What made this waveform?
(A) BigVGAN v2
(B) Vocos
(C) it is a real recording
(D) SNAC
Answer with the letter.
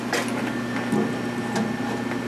C